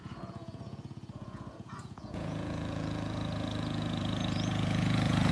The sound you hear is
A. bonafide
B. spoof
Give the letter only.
B